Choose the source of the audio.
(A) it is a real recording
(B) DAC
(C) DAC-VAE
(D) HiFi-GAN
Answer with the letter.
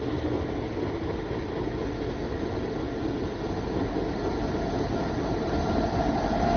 A